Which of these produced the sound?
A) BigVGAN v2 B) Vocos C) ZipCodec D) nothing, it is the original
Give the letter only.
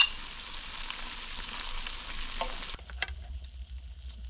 D